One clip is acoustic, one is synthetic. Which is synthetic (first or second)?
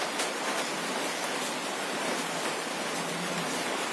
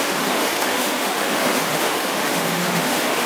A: second